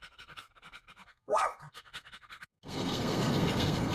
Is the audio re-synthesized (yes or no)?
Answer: yes